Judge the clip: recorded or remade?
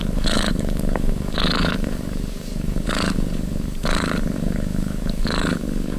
remade